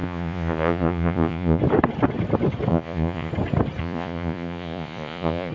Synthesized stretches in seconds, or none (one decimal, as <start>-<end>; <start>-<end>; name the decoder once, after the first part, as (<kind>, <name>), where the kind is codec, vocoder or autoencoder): 0.0-1.6 (vocoder, Vocos); 2.7-3.3; 3.8-5.5